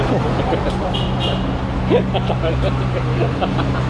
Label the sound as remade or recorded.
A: recorded